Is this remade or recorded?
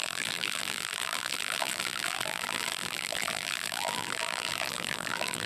remade